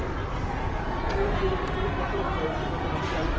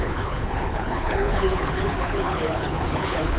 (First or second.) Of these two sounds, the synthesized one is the second